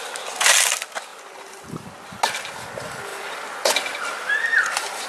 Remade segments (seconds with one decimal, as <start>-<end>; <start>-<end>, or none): none